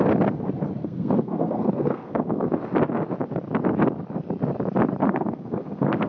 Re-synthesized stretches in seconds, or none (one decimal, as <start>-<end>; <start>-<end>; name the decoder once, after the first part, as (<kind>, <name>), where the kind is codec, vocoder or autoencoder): 0.8-2.6 (codec, SNAC); 5.0-6.1

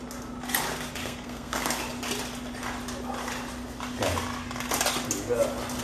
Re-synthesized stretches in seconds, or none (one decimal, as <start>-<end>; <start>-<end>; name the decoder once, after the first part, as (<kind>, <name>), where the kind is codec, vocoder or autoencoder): 1.0-1.8 (codec, SNAC)

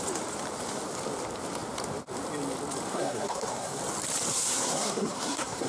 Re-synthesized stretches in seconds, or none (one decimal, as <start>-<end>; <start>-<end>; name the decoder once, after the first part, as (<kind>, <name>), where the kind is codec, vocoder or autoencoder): 2.9-3.8 (codec, SNAC); 4.3-5.7

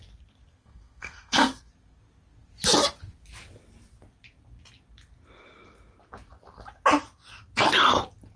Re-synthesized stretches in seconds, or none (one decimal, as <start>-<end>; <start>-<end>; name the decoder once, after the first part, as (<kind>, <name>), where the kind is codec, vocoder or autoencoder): 0.6-1.7 (codec, SNAC)

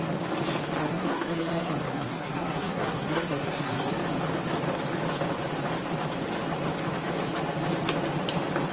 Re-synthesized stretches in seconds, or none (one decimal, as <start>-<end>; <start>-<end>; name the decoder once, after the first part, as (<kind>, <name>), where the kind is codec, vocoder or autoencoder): 0.8-3.9 (codec, SNAC)

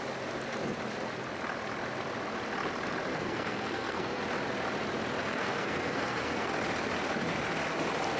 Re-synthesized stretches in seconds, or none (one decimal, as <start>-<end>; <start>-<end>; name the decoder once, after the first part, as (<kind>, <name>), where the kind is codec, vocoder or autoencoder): 3.1-4.2 (codec, SNAC); 5.2-6.5

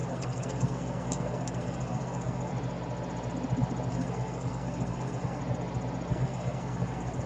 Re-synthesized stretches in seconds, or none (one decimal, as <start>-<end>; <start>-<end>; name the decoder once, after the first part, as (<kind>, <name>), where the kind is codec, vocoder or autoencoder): 0.0-2.5 (codec, SNAC); 3.9-5.4; 6.1-7.3

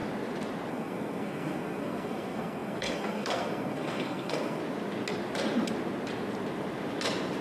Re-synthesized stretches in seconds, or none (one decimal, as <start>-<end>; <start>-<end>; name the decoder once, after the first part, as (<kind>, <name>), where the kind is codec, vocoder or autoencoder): 0.7-4.6 (codec, SNAC)